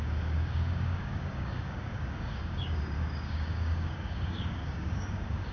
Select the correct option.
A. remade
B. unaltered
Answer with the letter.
A